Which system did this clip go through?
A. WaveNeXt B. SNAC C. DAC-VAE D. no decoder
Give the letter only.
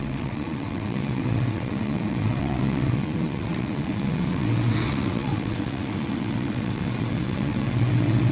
A